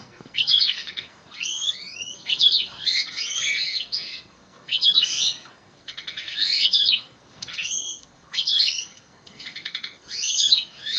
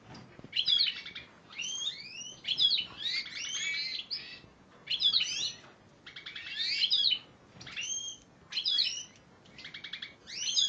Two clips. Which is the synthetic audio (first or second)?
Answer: first